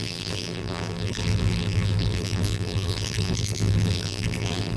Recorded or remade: remade